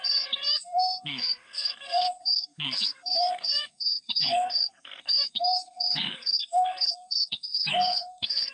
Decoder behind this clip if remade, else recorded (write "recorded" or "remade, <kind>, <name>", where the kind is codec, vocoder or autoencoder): remade, codec, SNAC